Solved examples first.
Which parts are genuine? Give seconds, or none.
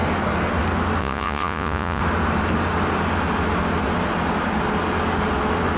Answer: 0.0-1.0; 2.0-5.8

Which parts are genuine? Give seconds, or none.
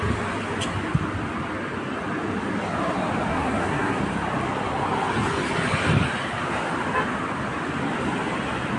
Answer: 0.0-3.3; 4.0-8.8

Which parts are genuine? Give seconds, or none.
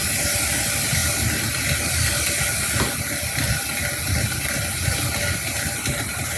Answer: 0.0-6.4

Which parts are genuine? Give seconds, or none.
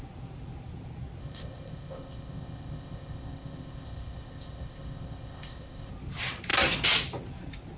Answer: 0.0-1.2; 5.9-7.8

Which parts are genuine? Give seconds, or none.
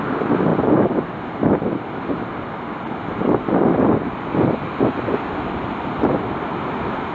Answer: 0.0-7.1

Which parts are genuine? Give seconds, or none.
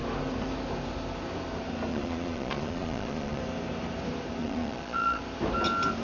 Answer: 0.0-1.9; 3.4-4.4; 5.2-6.0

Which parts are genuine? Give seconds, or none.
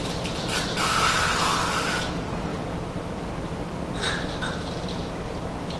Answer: 0.0-2.5; 4.0-5.8